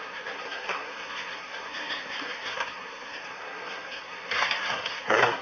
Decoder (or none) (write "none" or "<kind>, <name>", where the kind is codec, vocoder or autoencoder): codec, SNAC